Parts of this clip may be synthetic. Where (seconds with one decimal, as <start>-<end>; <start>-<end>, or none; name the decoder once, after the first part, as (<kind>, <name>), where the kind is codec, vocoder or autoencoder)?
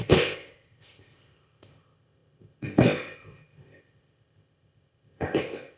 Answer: 0.0-5.8 (codec, ZipCodec)